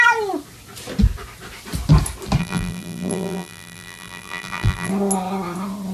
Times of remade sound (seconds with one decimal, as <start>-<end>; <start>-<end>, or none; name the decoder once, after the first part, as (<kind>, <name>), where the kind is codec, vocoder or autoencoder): 2.4-4.9 (vocoder, BigVGAN v2)